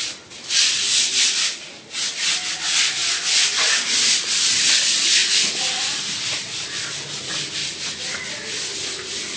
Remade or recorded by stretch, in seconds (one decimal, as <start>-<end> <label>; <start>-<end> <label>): 0.0-5.2 recorded; 5.2-6.2 remade; 6.2-9.4 recorded

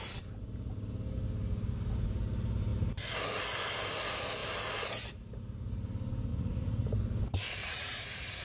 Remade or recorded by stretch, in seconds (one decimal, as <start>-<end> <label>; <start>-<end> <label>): 0.0-6.3 recorded; 6.3-6.9 remade; 6.9-7.6 recorded; 7.6-8.4 remade

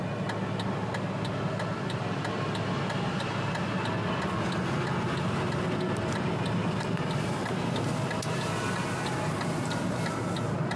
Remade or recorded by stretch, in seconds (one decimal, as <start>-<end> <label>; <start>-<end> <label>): 0.0-10.8 recorded

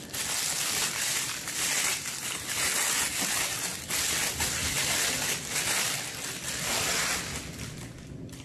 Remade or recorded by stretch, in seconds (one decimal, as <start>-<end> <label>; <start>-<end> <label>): 0.0-8.4 recorded

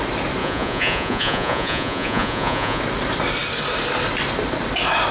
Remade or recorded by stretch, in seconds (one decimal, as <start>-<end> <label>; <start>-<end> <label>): 0.0-0.4 recorded; 0.4-2.8 remade; 2.8-5.1 recorded

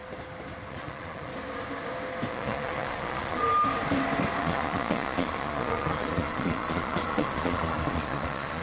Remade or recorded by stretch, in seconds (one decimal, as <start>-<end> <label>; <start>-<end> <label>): 0.0-0.7 recorded; 0.7-1.3 remade; 1.3-2.3 recorded; 2.3-3.4 remade; 3.4-4.4 recorded; 4.4-8.6 remade

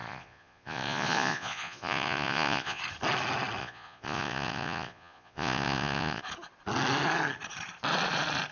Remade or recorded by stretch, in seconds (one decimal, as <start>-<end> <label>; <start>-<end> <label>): 0.0-2.8 remade; 2.8-3.6 recorded; 3.6-6.2 remade; 6.2-8.5 recorded